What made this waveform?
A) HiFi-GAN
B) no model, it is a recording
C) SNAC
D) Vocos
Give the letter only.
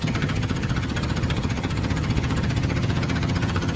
A